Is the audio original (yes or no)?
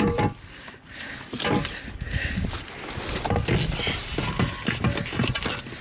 yes